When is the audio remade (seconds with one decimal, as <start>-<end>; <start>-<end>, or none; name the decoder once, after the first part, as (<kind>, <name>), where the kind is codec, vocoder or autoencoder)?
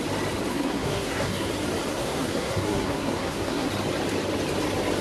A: 0.5-1.5 (codec, SNAC); 1.9-3.7